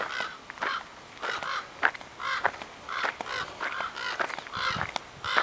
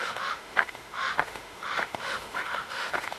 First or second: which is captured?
first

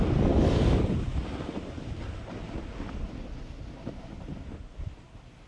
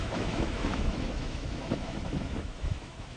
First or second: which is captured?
first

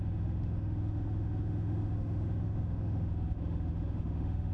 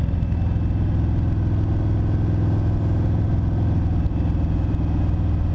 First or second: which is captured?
second